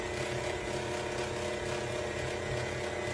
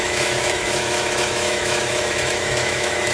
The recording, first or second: first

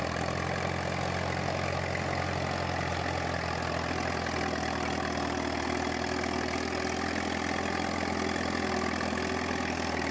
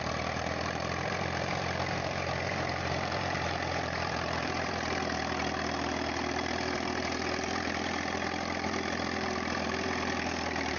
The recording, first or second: first